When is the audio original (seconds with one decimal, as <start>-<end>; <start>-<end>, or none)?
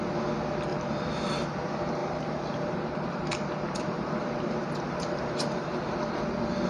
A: 0.0-0.7; 1.3-2.0; 6.0-6.7